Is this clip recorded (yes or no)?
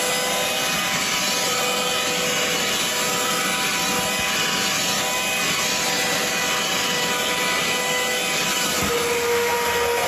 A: yes